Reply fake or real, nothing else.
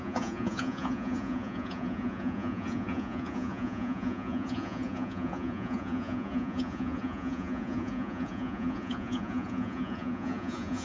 fake